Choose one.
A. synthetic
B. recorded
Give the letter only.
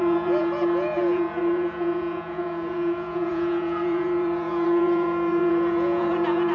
A